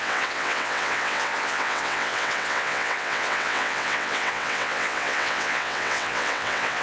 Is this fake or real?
fake